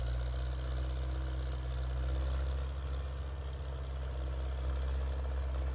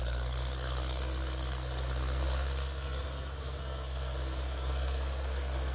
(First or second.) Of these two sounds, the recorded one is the first